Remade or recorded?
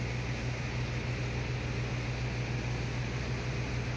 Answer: recorded